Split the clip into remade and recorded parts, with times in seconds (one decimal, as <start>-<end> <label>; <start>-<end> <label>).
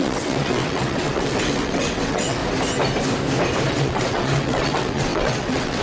0.0-2.4 remade; 2.4-3.7 recorded; 3.7-5.8 remade